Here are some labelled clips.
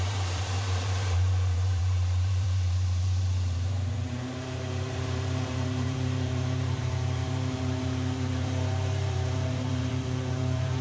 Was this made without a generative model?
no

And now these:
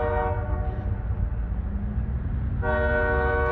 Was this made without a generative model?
yes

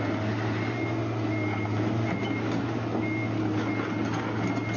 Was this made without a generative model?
yes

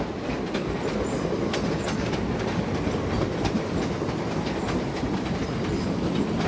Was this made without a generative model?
yes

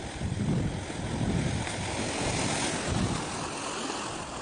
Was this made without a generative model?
yes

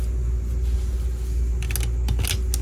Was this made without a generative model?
yes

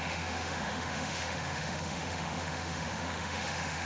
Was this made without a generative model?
no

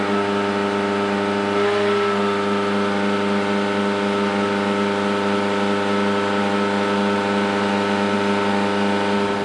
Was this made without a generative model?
yes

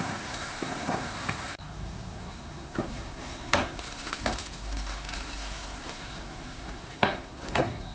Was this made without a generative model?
no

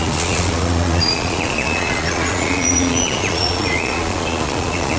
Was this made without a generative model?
no